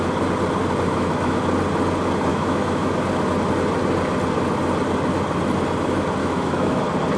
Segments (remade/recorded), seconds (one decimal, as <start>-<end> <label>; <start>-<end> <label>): 0.0-0.9 recorded; 0.9-1.4 remade; 1.4-2.3 recorded; 2.3-3.0 remade; 3.0-6.2 recorded; 6.2-6.8 remade; 6.8-7.2 recorded